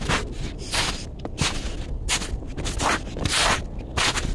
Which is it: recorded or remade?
recorded